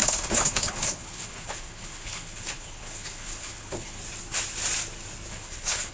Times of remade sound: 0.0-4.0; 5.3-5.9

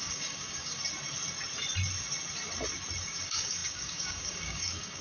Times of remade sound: 0.0-0.8; 3.0-5.0

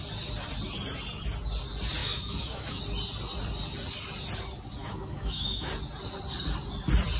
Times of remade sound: 2.0-2.8; 4.8-5.7